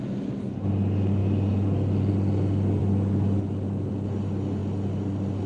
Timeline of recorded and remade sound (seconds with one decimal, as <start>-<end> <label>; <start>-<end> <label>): 0.0-5.5 recorded